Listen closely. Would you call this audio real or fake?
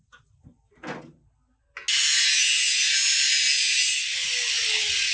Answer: real